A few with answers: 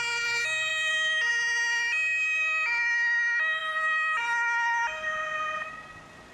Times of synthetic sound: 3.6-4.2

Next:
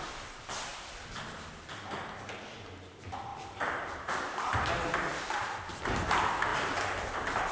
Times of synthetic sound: 3.3-5.8; 6.5-7.1

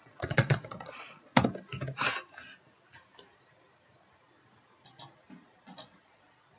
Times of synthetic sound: 0.0-1.3; 5.3-6.6

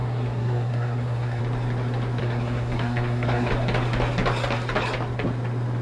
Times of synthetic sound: 0.0-1.4; 2.2-3.5

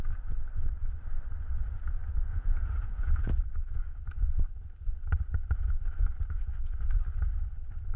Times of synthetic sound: 2.3-3.4

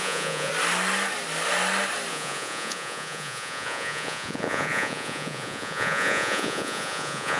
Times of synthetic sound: 0.0-0.5; 2.1-7.4

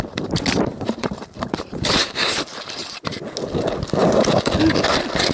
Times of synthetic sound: 0.7-3.0

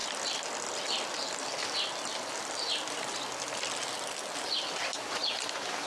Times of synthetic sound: none